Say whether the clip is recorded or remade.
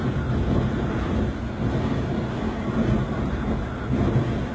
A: recorded